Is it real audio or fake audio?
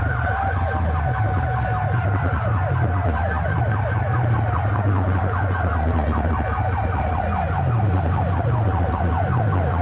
real